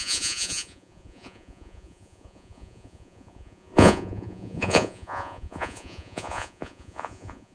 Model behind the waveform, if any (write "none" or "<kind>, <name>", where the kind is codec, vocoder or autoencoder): vocoder, Vocos